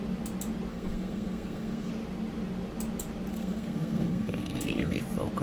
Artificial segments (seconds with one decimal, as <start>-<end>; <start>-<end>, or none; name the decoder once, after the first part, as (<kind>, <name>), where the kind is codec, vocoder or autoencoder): 0.7-1.9 (codec, SNAC); 3.3-5.0

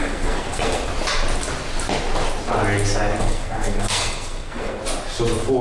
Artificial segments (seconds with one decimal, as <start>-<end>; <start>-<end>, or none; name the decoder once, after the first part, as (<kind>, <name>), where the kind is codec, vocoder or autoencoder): 0.0-0.9 (codec, SNAC); 3.2-4.8